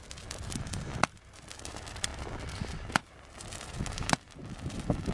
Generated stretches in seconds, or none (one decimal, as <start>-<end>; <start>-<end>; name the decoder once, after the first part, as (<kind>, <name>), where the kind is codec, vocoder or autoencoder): none